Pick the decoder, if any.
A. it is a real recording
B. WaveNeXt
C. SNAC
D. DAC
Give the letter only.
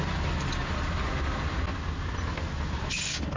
A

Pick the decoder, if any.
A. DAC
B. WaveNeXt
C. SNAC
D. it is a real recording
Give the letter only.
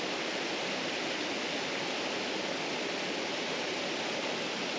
D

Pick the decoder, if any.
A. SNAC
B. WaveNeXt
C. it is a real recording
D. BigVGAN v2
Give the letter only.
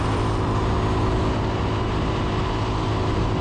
C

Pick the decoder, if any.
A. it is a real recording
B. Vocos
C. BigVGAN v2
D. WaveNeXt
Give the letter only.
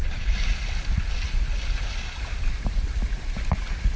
A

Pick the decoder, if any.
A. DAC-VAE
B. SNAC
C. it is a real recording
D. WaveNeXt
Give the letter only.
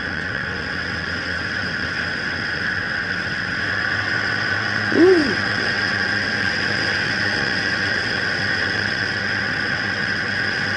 D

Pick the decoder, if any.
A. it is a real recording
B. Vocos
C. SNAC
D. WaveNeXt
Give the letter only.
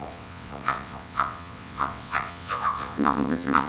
D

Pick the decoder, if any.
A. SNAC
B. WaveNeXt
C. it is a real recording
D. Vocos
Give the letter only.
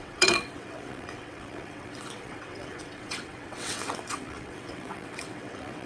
B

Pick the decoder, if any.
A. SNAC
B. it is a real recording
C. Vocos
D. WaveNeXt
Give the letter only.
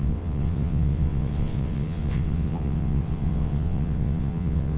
D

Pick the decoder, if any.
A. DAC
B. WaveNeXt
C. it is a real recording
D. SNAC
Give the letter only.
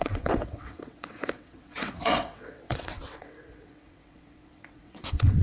B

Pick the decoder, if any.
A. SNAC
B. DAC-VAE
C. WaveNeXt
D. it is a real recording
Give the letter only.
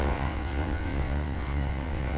C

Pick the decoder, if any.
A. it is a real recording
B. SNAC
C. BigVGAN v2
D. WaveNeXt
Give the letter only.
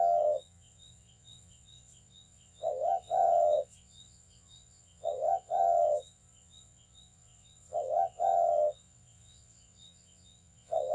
D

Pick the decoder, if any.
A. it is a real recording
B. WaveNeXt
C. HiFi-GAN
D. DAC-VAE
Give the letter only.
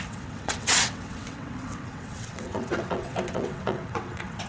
B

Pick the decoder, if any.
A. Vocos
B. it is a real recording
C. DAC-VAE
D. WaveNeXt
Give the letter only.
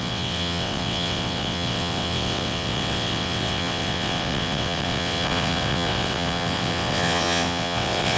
D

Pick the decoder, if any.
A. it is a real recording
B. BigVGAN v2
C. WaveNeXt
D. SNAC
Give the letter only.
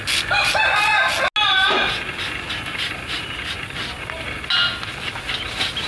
A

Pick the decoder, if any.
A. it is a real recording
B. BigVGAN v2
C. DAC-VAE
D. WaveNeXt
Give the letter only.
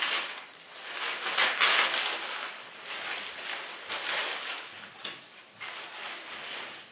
A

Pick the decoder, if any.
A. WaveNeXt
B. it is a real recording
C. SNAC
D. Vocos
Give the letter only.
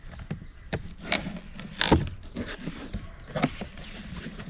B